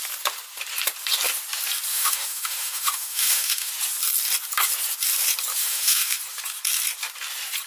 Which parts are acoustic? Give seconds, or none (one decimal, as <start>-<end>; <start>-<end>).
0.0-1.9; 3.7-5.6; 6.2-7.7